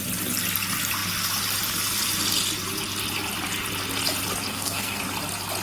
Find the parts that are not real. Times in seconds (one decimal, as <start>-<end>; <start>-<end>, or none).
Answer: 4.5-5.0